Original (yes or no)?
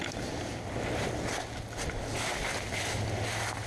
yes